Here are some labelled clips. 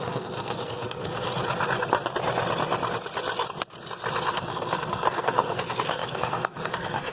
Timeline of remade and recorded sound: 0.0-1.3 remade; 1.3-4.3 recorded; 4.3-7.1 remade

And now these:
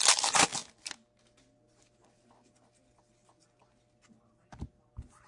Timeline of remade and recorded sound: 0.0-5.3 recorded

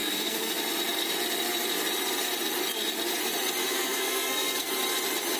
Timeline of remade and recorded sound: 0.0-0.6 remade; 0.6-3.6 recorded; 3.6-4.7 remade; 4.7-5.4 recorded

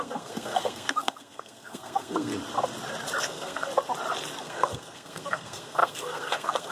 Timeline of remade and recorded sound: 0.0-2.3 remade; 2.3-3.2 recorded; 3.2-3.7 remade; 3.7-4.4 recorded; 4.4-6.7 remade

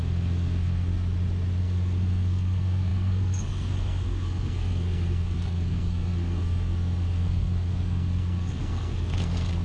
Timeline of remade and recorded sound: 0.0-0.9 remade; 0.9-1.6 recorded; 1.6-9.6 remade